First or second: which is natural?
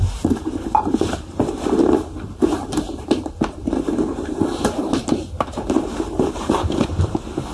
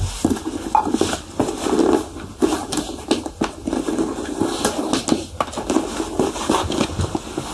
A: second